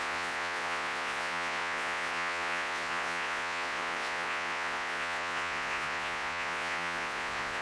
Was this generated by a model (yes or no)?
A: yes